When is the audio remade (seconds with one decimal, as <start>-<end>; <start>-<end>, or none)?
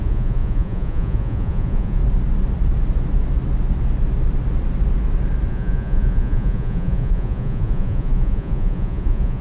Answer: 0.0-2.0; 5.5-9.4